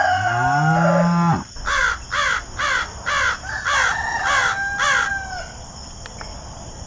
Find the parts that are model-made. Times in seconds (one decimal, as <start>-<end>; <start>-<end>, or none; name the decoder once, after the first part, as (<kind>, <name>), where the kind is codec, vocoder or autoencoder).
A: none